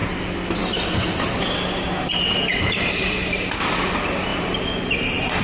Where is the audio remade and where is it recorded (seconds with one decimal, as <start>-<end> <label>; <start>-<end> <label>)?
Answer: 0.0-2.5 recorded; 2.5-3.6 remade; 3.6-5.4 recorded